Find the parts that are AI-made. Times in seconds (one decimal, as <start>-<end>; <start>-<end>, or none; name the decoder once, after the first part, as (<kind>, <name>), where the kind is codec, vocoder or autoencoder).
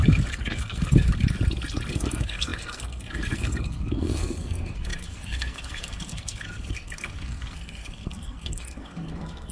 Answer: 0.0-1.1 (codec, SNAC); 1.9-9.5